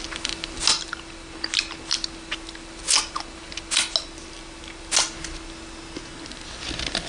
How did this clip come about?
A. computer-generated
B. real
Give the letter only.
B